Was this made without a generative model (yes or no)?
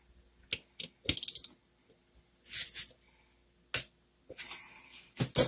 yes